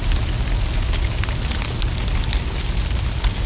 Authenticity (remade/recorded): recorded